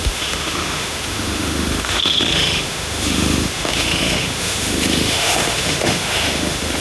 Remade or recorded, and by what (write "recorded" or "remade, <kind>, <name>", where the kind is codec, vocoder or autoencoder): remade, autoencoder, DAC-VAE